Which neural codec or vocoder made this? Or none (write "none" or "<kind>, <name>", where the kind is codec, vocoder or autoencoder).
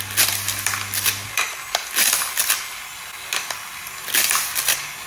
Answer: none